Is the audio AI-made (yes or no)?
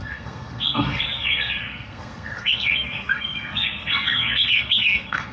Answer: yes